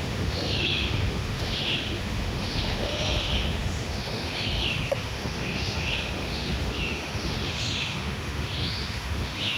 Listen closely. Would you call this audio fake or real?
fake